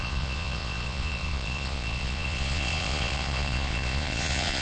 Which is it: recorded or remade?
remade